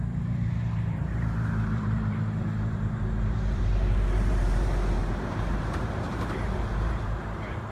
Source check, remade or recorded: remade